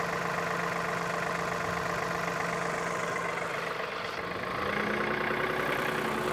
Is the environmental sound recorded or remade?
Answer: recorded